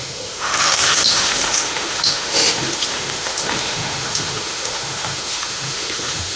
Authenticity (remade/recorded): remade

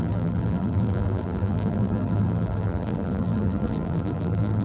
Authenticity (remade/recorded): remade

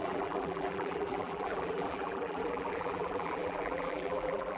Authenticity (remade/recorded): remade